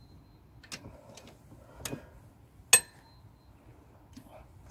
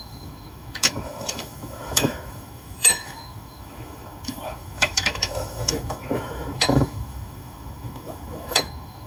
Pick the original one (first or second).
first